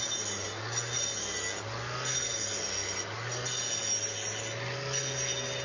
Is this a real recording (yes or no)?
yes